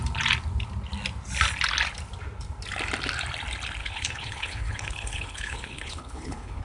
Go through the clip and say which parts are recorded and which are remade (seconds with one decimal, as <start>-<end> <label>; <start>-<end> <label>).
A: 0.0-3.8 recorded; 3.8-6.6 remade